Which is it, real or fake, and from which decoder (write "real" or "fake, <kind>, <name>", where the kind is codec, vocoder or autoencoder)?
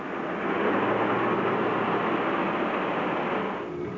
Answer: real